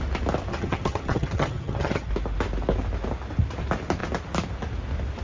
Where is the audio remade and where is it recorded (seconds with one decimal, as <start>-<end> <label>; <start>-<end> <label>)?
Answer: 0.0-0.5 recorded; 0.5-2.1 remade; 2.1-5.2 recorded